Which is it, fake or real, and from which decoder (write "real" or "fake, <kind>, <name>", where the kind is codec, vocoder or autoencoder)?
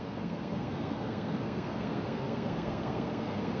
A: fake, codec, SNAC